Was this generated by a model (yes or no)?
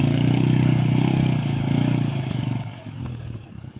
yes